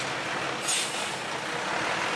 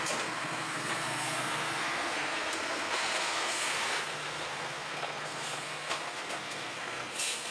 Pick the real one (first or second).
first